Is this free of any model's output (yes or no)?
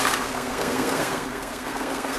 no